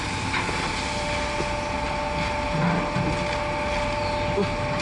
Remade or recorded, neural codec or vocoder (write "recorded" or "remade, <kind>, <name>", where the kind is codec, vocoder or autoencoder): recorded